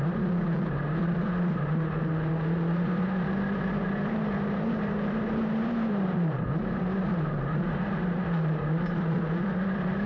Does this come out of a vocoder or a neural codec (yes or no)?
yes